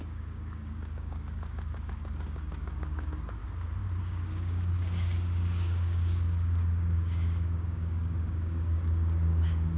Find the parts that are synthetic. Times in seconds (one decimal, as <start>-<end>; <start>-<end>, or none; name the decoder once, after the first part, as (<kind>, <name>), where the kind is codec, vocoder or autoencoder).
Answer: 0.0-3.4 (codec, DAC); 4.0-9.8